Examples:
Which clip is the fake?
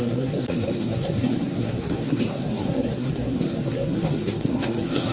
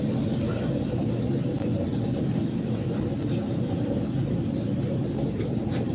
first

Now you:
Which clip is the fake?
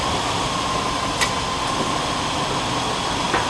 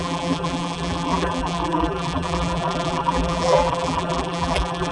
second